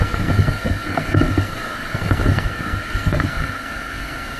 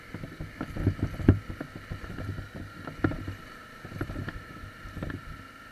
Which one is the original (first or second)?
second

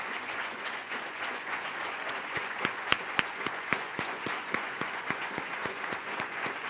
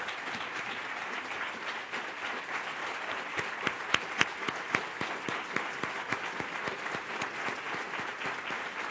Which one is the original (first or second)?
second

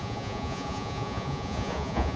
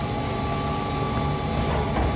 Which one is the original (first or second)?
second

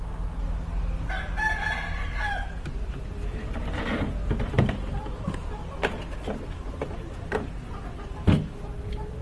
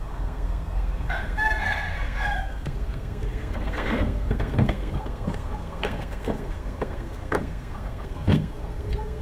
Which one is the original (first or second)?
first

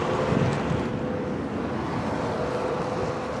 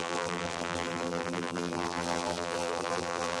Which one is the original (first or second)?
first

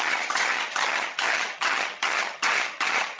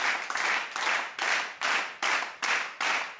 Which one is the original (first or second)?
second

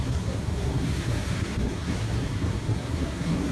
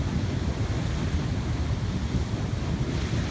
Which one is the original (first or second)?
second